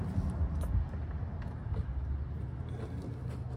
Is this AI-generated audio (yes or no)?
no